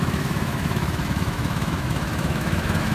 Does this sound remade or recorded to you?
remade